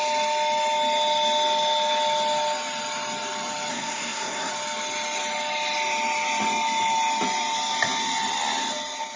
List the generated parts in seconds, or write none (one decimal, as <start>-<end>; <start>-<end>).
3.7-4.5